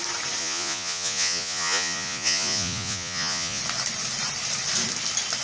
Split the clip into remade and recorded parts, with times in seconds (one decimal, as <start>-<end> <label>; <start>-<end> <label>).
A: 0.0-0.4 recorded; 0.4-3.6 remade; 3.6-5.4 recorded